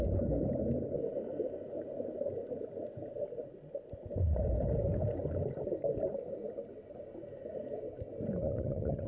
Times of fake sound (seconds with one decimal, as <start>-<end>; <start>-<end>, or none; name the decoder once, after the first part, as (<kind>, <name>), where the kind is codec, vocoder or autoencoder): 8.4-9.1 (vocoder, HiFi-GAN)